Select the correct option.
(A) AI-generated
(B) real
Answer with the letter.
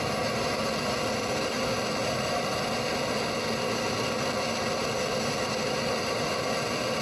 B